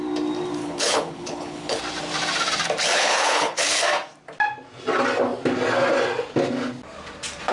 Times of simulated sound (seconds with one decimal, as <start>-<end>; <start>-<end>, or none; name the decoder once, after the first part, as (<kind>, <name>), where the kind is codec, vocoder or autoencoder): 0.6-1.8 (codec, HILCodec); 2.9-3.8